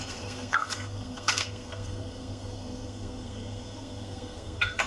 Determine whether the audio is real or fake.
fake